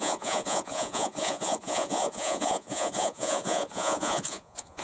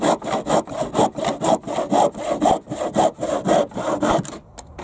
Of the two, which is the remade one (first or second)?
first